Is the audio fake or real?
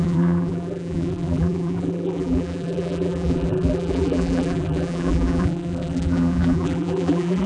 fake